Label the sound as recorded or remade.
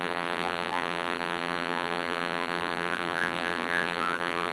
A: remade